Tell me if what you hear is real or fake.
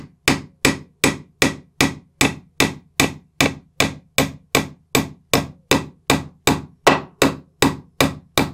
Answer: real